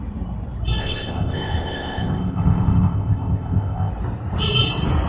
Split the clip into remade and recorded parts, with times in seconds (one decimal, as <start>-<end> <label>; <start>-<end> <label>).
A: 0.0-0.8 recorded; 0.8-3.9 remade; 3.9-5.1 recorded